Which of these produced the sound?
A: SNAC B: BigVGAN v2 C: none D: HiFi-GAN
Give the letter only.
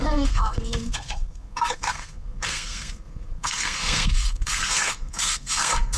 A